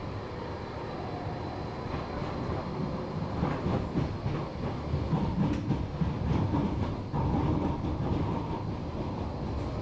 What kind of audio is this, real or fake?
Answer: real